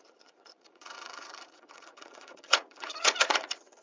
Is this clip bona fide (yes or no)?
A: no